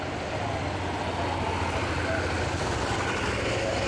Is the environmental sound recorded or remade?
recorded